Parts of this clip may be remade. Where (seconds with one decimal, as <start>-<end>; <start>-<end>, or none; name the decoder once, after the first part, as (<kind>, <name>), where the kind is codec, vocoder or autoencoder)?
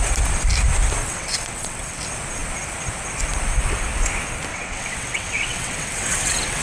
1.0-2.0 (vocoder, WaveNeXt); 4.5-6.6